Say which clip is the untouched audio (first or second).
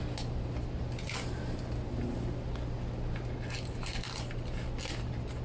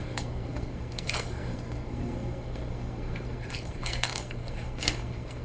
first